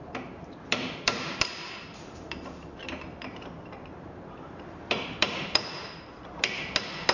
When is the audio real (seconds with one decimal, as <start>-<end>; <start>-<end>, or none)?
3.4-3.9; 6.0-7.1